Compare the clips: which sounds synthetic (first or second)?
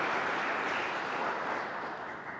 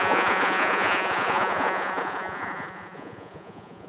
second